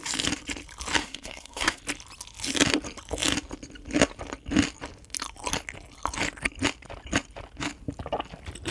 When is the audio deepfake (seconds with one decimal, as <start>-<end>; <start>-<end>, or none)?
1.0-1.8